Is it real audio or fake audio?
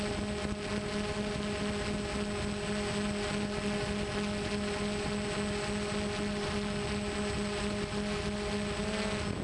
real